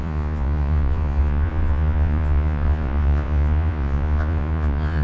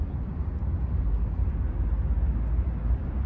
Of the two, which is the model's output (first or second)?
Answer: first